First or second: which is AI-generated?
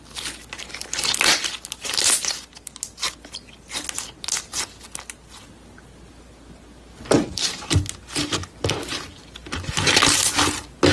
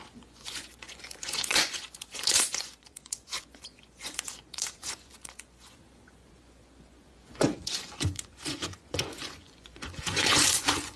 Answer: second